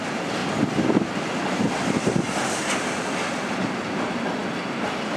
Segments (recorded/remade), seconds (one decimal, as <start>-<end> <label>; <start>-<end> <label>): 0.0-5.2 recorded